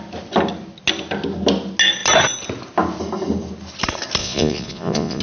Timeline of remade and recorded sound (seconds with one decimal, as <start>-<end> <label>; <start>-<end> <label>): 0.0-4.2 recorded; 4.2-5.2 remade